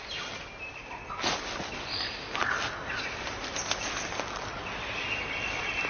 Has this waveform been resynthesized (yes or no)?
no